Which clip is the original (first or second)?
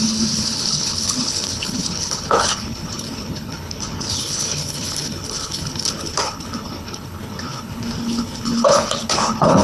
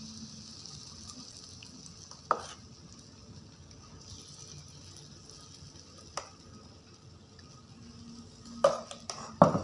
second